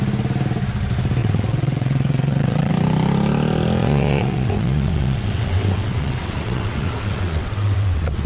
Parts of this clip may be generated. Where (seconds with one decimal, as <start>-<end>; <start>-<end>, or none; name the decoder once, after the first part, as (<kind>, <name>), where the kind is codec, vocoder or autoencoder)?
1.2-2.7 (vocoder, WaveNeXt); 3.8-8.3